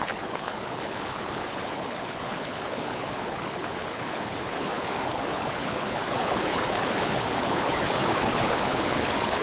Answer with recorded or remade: remade